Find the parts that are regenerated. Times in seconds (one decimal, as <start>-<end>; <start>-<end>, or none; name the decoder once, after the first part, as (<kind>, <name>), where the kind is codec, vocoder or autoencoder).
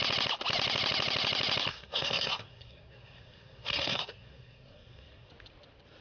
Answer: 1.7-5.3 (codec, SNAC)